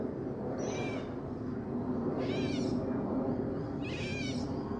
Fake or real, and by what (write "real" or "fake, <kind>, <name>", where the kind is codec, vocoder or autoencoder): real